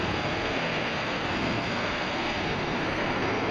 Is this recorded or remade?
remade